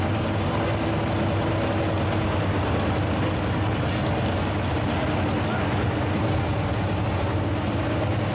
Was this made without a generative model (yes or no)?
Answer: yes